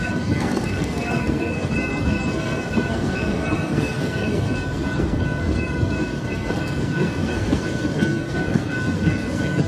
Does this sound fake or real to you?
fake